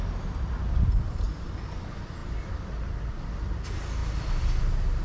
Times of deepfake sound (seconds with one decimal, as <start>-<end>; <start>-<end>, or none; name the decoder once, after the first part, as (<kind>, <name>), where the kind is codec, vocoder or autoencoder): 2.2-2.7 (vocoder, BigVGAN v2); 4.0-4.6